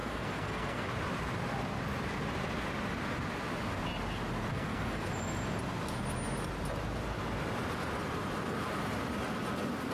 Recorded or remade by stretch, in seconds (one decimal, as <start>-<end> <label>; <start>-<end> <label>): 0.0-0.8 remade; 0.8-4.5 recorded; 4.5-5.1 remade; 5.1-9.9 recorded